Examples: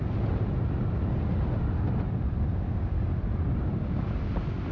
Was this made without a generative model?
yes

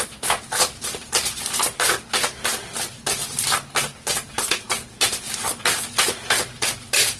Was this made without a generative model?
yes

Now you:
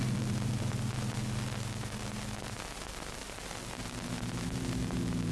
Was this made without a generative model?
no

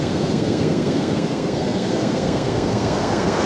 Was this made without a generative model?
no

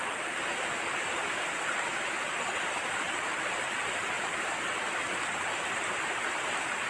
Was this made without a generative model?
yes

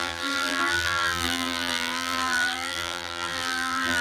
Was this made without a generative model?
no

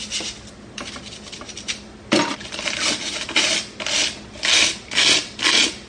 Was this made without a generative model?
yes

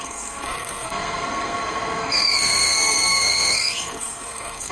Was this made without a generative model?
no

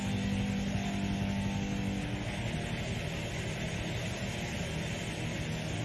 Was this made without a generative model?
yes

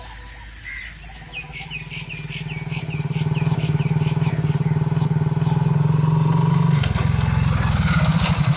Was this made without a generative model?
yes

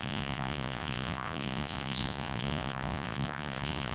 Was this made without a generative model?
no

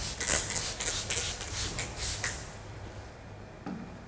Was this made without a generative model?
yes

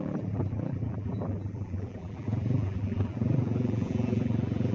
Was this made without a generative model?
no